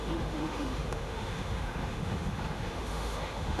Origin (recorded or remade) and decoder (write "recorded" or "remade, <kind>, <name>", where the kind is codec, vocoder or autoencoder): remade, autoencoder, DAC-VAE